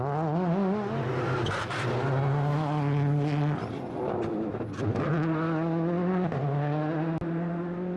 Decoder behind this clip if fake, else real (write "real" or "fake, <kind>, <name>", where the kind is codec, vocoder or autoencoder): real